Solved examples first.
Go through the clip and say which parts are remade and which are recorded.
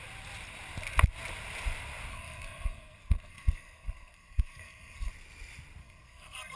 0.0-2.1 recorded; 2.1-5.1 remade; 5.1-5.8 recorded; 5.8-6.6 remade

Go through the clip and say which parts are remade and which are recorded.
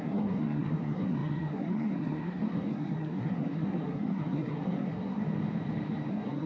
0.0-5.2 remade; 5.2-6.1 recorded; 6.1-6.5 remade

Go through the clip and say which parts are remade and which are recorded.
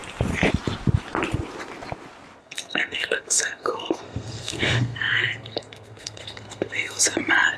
0.0-2.4 recorded; 2.4-7.0 remade; 7.0-7.6 recorded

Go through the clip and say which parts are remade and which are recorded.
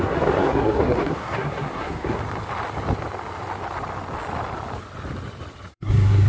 0.0-2.2 remade; 2.2-5.7 recorded; 5.7-6.3 remade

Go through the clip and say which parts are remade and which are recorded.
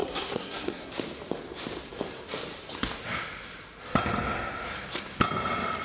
0.0-0.9 remade; 0.9-5.8 recorded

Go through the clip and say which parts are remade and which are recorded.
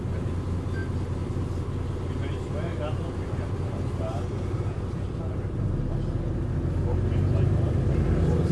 0.0-8.5 recorded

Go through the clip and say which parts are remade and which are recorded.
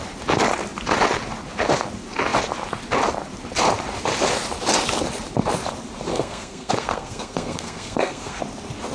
0.0-6.1 recorded; 6.1-8.4 remade; 8.4-8.9 recorded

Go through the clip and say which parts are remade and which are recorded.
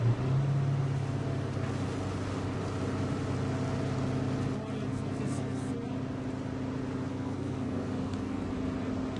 0.0-4.9 recorded; 4.9-5.7 remade; 5.7-7.1 recorded; 7.1-8.5 remade; 8.5-9.2 recorded